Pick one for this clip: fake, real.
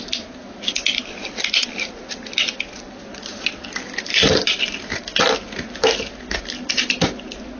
real